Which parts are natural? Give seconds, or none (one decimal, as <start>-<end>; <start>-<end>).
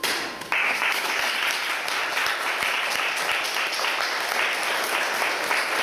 0.0-0.6; 1.2-5.8